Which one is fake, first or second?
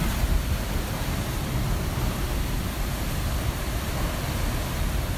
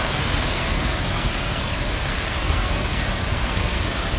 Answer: second